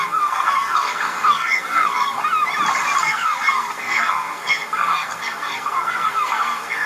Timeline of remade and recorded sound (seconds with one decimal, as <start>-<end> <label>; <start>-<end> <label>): 0.0-2.2 remade; 2.2-3.0 recorded; 3.0-6.9 remade

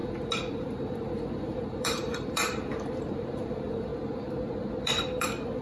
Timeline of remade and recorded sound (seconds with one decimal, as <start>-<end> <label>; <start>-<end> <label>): 0.0-3.9 remade; 3.9-4.8 recorded; 4.8-5.6 remade

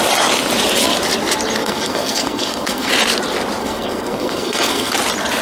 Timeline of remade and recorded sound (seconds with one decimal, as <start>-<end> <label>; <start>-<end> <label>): 0.0-1.6 recorded; 1.6-2.9 remade; 2.9-3.6 recorded; 3.6-4.9 remade; 4.9-5.4 recorded

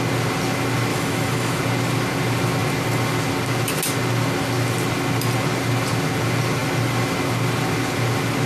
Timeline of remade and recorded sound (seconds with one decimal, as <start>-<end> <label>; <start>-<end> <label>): 0.0-0.9 recorded; 0.9-1.6 remade; 1.6-8.5 recorded

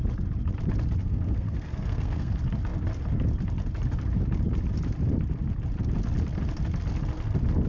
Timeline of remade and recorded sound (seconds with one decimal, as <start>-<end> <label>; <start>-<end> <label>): 0.0-1.0 recorded; 1.0-2.3 remade; 2.3-7.7 recorded

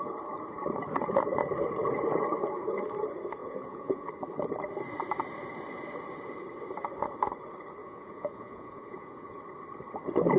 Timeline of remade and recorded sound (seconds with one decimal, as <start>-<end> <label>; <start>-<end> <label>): 0.0-3.4 recorded; 3.4-4.1 remade; 4.1-7.8 recorded; 7.8-9.4 remade; 9.4-10.4 recorded

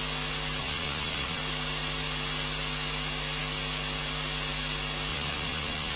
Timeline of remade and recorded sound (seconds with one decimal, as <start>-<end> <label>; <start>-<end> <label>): 0.0-0.6 recorded; 0.6-1.4 remade; 1.4-5.1 recorded; 5.1-6.0 remade

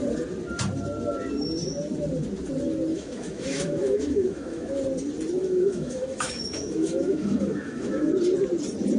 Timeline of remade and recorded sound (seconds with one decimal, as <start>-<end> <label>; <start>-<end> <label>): 0.0-2.9 recorded; 2.9-4.7 remade; 4.7-5.4 recorded; 5.4-8.1 remade; 8.1-9.0 recorded